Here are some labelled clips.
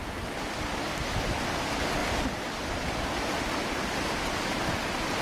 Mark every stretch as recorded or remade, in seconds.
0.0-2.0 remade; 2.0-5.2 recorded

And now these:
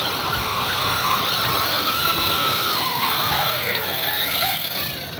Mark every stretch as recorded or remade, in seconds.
0.0-0.4 recorded; 0.4-1.2 remade; 1.2-1.7 recorded; 1.7-4.8 remade; 4.8-5.2 recorded

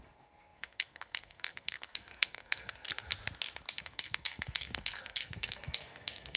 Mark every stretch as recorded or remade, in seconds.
0.0-3.1 remade; 3.1-3.8 recorded; 3.8-6.4 remade

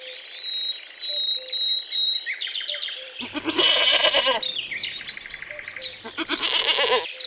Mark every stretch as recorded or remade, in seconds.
0.0-3.9 remade; 3.9-5.8 recorded; 5.8-6.6 remade; 6.6-7.3 recorded

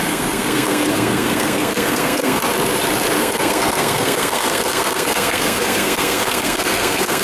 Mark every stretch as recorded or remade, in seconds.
0.0-2.4 remade; 2.4-3.2 recorded; 3.2-7.2 remade

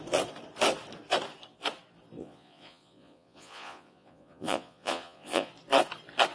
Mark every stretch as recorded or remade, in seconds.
0.0-2.2 recorded; 2.2-5.5 remade; 5.5-6.3 recorded

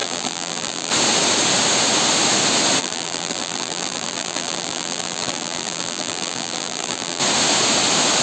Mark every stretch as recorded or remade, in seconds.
0.0-0.9 remade; 0.9-2.8 recorded; 2.8-7.2 remade; 7.2-8.2 recorded

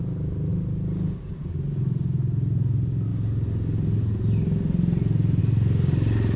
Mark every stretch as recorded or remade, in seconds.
0.0-6.4 recorded